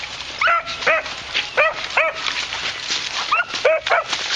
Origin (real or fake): real